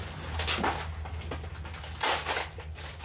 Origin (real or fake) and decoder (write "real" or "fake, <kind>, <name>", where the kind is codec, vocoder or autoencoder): real